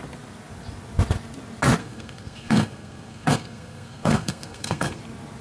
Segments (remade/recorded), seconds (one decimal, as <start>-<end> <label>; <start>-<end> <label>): 0.0-1.8 recorded; 1.8-5.0 remade; 5.0-5.4 recorded